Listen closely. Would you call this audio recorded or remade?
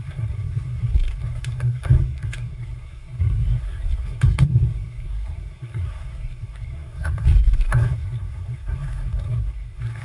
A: remade